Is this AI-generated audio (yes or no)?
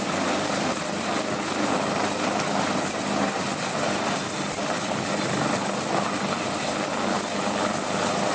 no